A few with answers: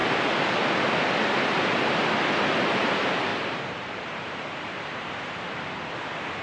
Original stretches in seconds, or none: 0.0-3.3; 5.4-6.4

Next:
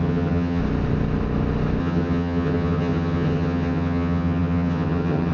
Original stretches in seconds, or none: 0.6-1.8